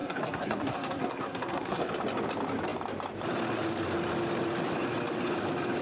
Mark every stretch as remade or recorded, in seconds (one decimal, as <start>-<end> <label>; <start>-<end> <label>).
0.0-1.9 remade; 1.9-5.8 recorded